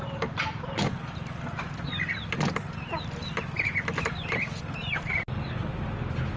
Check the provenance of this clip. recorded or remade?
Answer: recorded